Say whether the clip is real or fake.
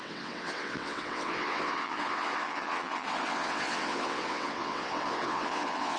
fake